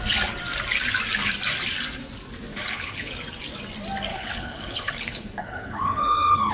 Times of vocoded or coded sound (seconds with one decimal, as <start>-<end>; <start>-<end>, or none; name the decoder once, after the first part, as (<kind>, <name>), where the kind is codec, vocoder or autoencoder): 2.5-3.1 (codec, HILCodec); 4.1-6.5